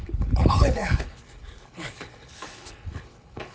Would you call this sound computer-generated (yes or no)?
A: yes